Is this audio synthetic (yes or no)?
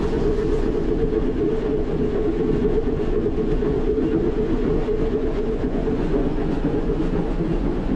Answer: yes